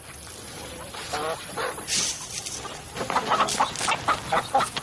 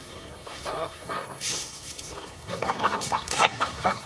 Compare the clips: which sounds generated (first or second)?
second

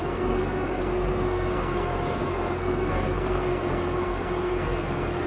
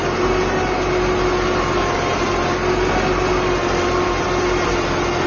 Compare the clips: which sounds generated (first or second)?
first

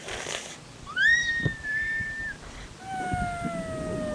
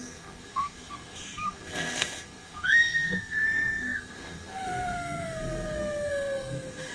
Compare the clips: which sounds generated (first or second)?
second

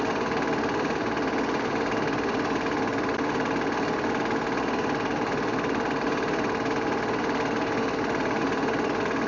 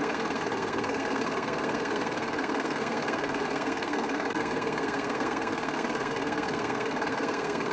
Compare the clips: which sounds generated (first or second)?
second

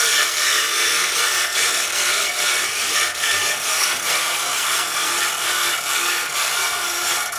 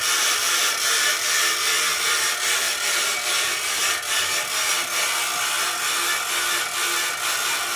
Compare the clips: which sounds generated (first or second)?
first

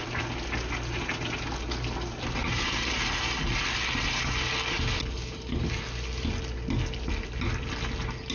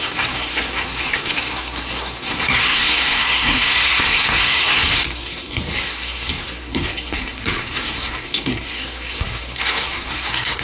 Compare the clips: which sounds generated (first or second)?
second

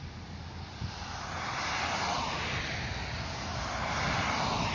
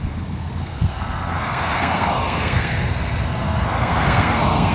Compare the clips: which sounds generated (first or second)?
second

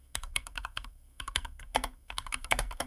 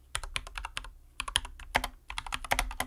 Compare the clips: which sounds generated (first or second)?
first